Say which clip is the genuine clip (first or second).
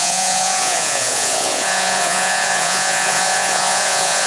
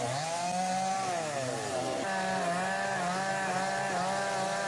second